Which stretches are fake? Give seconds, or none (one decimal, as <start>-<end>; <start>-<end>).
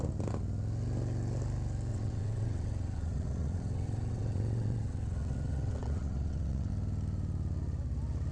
1.9-6.7